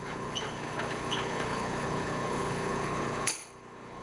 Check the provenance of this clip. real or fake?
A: fake